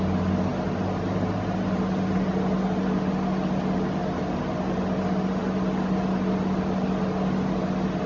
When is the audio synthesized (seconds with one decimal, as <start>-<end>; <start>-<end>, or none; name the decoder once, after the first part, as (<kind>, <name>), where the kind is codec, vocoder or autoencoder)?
none